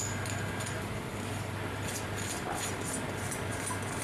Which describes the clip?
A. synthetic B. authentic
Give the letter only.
B